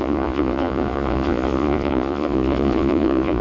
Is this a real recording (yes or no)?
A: no